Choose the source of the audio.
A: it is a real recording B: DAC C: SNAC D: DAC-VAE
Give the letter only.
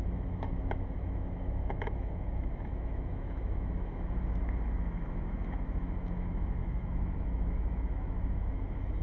D